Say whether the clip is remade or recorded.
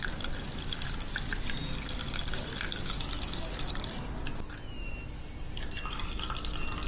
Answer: recorded